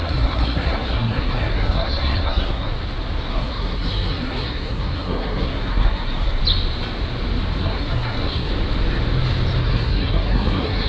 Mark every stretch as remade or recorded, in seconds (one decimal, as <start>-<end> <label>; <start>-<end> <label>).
0.0-2.7 remade; 2.7-3.3 recorded; 3.3-6.4 remade; 6.4-7.6 recorded; 7.6-8.5 remade; 8.5-9.6 recorded; 9.6-10.9 remade